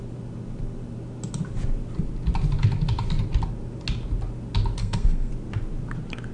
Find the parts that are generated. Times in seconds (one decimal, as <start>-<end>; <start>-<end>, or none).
4.8-5.3